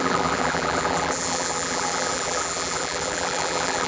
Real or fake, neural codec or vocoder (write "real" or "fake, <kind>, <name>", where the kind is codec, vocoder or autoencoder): fake, vocoder, BigVGAN v2